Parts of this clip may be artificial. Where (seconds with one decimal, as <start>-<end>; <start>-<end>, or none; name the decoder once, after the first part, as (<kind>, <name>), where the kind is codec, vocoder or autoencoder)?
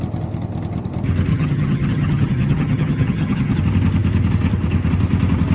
1.3-3.6 (vocoder, HiFi-GAN)